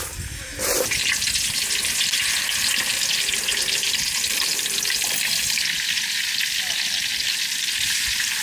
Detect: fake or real real